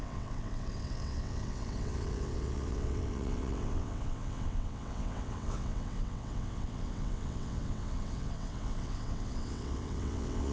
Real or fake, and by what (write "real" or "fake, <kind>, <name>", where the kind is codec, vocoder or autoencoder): fake, vocoder, WaveNeXt